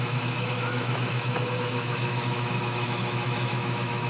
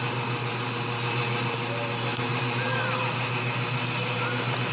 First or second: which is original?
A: second